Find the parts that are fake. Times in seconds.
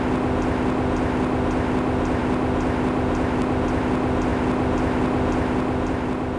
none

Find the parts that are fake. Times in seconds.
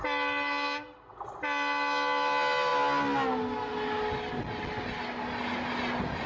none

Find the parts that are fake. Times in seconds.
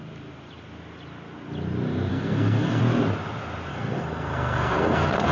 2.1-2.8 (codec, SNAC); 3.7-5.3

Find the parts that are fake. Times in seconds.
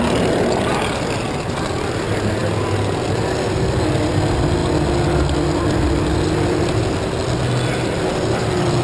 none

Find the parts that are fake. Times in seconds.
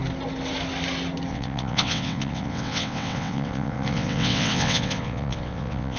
1.3-6.0 (vocoder, WaveNeXt)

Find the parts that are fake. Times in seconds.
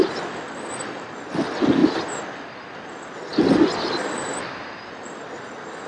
0.0-0.7 (vocoder, BigVGAN v2); 3.3-4.7